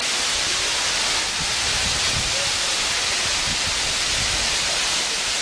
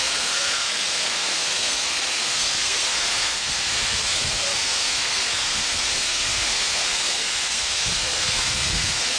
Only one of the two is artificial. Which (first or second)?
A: second